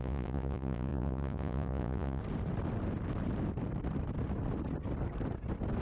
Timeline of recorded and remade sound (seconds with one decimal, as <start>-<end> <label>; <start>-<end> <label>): 0.0-2.2 remade; 2.2-5.8 recorded